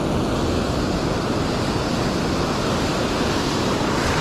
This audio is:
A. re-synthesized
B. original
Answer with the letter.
B